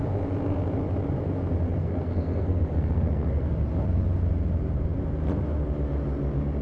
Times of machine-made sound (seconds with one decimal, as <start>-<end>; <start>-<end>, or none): 1.8-3.5